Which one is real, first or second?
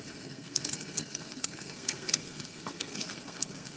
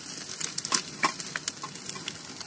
second